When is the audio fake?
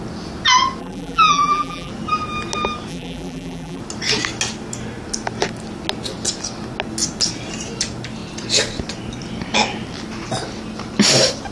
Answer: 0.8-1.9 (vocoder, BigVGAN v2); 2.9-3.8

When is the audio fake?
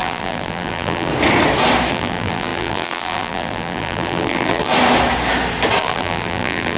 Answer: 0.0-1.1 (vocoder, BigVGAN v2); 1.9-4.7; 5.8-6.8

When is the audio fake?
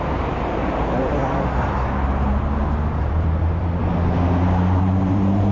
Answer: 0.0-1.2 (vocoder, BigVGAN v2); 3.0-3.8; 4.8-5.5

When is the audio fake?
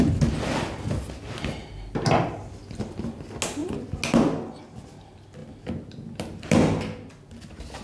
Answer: none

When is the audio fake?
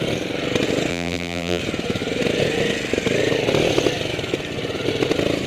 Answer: 0.9-1.6 (vocoder, BigVGAN v2)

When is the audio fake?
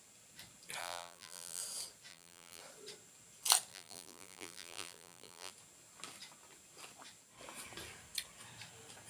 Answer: 0.8-1.6 (vocoder, BigVGAN v2); 2.1-2.6; 3.7-5.5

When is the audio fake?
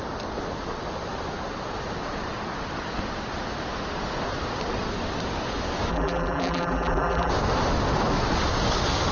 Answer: 5.9-7.3 (vocoder, BigVGAN v2)